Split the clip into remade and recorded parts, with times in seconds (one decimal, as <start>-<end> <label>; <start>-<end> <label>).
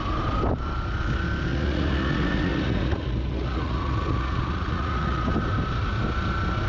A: 0.0-1.5 recorded; 1.5-5.3 remade; 5.3-6.7 recorded